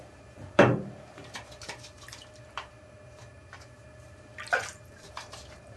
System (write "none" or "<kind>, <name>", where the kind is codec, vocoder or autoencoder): vocoder, BigVGAN v2